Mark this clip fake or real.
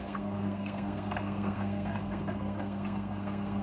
fake